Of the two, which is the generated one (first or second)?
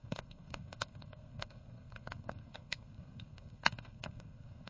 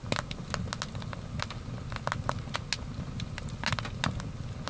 first